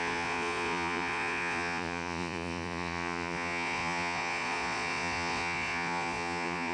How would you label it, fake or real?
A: fake